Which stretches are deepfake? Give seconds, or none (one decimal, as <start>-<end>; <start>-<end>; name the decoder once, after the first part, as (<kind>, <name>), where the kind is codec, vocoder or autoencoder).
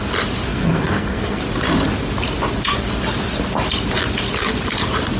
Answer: 0.5-1.4 (codec, SNAC)